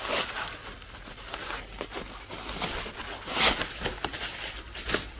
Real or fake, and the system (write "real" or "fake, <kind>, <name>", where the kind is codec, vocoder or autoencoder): real